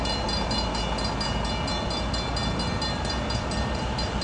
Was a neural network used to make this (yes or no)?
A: no